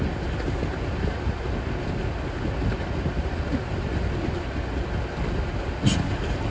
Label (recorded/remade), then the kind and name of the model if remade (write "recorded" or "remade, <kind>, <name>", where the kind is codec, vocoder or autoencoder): recorded